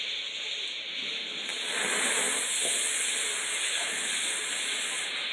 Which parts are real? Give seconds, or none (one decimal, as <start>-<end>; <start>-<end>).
0.0-3.5; 4.1-5.3